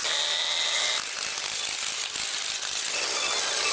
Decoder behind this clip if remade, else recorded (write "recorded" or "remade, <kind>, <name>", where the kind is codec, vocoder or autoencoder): recorded